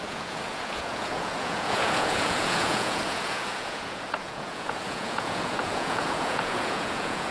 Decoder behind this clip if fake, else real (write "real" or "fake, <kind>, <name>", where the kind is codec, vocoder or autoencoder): fake, vocoder, Vocos